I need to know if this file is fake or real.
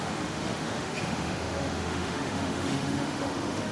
fake